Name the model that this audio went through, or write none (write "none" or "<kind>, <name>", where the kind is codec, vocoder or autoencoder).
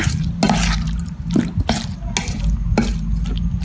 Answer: none